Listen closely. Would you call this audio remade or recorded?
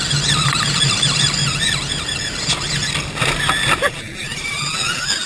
recorded